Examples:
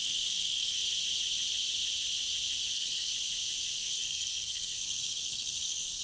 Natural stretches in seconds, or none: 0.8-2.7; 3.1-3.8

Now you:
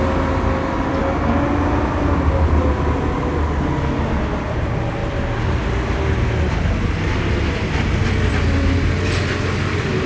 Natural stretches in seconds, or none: 0.0-10.1